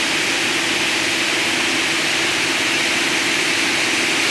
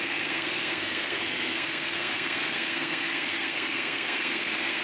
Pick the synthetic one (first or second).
second